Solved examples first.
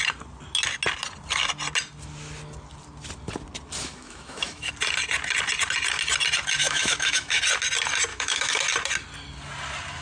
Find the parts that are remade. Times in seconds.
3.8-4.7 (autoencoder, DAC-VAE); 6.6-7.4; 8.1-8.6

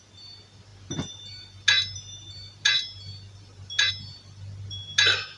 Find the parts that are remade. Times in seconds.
none

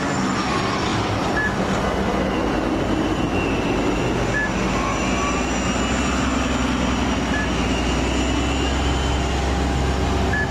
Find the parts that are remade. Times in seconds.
none

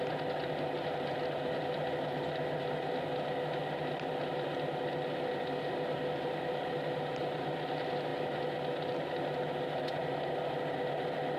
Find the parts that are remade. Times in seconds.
none